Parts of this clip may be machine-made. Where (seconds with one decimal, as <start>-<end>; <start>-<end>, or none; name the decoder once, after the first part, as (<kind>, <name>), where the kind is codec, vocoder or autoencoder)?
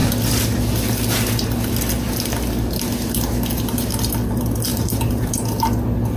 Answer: 4.7-5.3 (vocoder, BigVGAN v2)